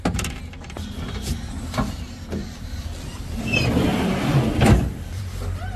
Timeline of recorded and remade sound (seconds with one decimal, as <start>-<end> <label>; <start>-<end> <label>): 0.0-2.4 recorded; 2.4-3.3 remade; 3.3-3.9 recorded; 3.9-5.8 remade